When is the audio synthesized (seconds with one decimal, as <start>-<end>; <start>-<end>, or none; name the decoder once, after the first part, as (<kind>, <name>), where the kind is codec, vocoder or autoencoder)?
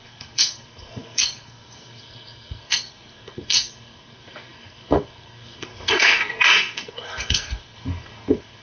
0.0-8.6 (codec, SNAC)